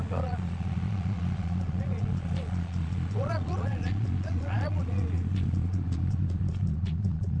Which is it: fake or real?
fake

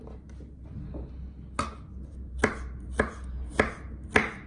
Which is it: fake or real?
real